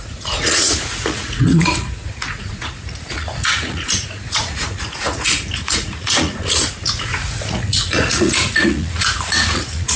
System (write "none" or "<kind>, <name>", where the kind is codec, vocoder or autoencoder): vocoder, Vocos